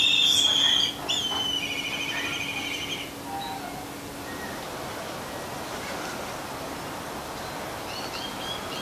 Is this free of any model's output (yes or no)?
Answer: yes